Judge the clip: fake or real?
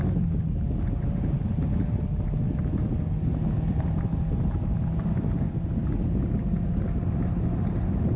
real